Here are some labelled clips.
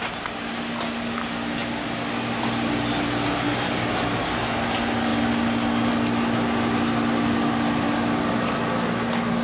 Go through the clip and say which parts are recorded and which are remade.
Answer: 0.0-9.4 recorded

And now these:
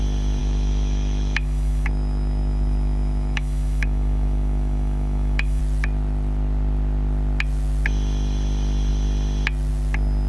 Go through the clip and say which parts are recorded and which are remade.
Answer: 0.0-0.4 recorded; 0.4-5.6 remade; 5.6-10.3 recorded

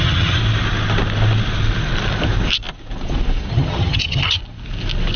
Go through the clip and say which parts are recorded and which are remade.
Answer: 0.0-0.4 remade; 0.4-3.5 recorded; 3.5-4.4 remade; 4.4-5.2 recorded